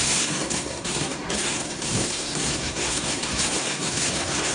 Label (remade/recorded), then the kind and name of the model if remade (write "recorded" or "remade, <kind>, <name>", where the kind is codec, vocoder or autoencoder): remade, codec, SNAC